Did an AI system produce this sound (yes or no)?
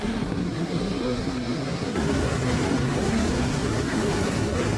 yes